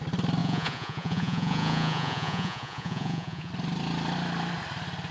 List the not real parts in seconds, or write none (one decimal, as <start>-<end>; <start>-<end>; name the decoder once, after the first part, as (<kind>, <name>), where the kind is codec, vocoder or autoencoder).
0.4-3.5 (vocoder, Vocos)

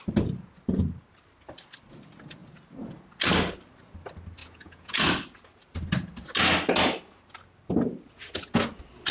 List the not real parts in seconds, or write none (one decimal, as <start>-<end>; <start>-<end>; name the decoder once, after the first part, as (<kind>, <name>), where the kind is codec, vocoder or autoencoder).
4.4-5.0 (vocoder, Vocos)

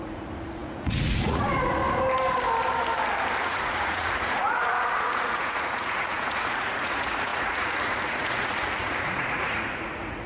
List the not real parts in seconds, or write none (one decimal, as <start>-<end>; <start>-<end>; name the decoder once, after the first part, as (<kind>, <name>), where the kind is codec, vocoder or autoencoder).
0.0-1.8 (vocoder, Vocos); 3.4-10.3